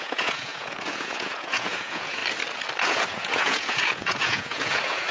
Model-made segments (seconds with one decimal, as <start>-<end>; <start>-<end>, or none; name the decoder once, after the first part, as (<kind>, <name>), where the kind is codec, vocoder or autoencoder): 0.0-2.2 (vocoder, Vocos); 2.8-5.1